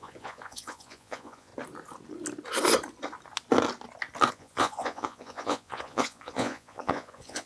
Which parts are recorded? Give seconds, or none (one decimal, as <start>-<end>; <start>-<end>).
1.5-4.3